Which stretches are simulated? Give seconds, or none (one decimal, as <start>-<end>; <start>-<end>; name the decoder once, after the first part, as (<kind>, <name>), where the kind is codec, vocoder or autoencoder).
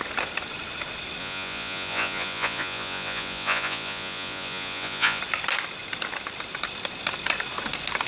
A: 1.2-5.2 (vocoder, Vocos)